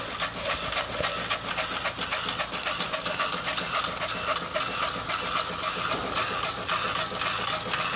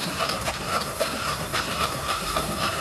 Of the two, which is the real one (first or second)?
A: first